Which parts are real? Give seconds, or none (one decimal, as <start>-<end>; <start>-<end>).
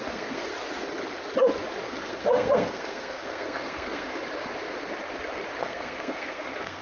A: 0.5-1.8; 4.1-5.6